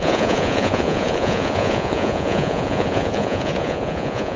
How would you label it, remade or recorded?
remade